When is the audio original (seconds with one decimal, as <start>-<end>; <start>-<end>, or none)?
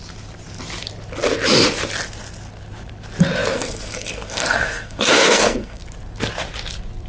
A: 0.0-3.5; 5.8-7.1